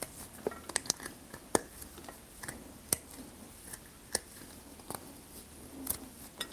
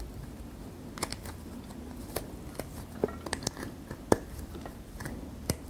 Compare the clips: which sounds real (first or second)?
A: first